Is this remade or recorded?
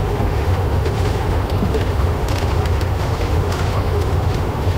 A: remade